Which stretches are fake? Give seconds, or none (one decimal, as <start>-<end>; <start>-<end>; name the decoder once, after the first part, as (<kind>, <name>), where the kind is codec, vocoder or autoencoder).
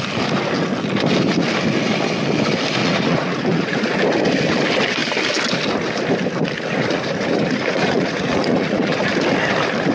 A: 2.8-3.9 (vocoder, Vocos); 6.7-9.1